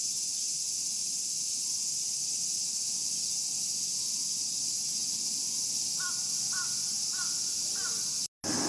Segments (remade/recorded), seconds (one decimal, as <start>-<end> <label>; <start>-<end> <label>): 0.0-5.0 recorded; 5.0-5.8 remade; 5.8-8.7 recorded